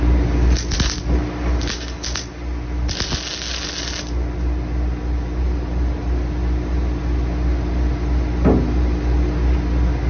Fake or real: real